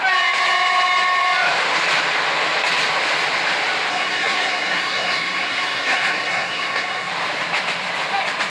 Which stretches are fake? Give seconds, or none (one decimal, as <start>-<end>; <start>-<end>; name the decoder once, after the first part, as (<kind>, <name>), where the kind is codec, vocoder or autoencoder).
3.9-7.1 (codec, SNAC)